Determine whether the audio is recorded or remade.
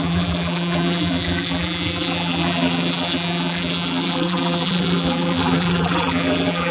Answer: remade